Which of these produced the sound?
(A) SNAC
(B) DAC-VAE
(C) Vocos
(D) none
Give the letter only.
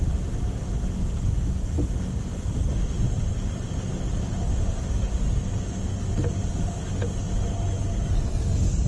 D